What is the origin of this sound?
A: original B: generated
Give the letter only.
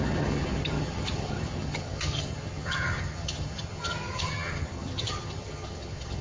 B